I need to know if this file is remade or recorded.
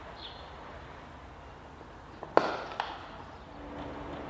recorded